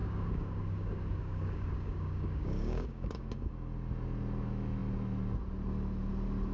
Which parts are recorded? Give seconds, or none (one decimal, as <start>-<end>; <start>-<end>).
3.5-6.5